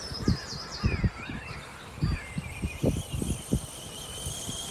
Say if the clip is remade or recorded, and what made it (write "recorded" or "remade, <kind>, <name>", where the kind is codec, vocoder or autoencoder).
recorded